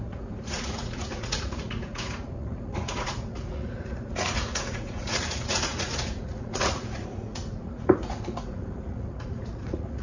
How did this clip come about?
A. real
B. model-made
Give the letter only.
B